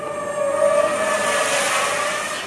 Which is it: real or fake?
real